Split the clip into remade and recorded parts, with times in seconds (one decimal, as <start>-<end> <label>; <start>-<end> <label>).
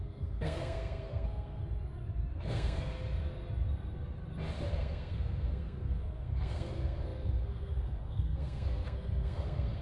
0.0-1.6 remade; 1.6-2.3 recorded; 2.3-2.9 remade; 2.9-4.7 recorded; 4.7-9.8 remade